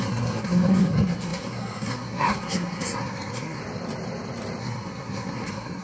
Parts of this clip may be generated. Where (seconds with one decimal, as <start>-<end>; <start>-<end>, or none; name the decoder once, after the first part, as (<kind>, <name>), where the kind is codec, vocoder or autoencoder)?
0.0-3.6 (codec, SNAC); 4.6-5.8